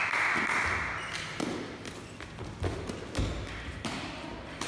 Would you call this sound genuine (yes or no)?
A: yes